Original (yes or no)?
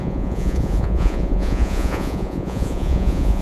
no